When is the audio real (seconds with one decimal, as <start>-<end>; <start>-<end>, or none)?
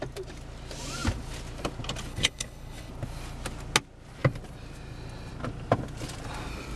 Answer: 0.0-2.1; 2.9-6.8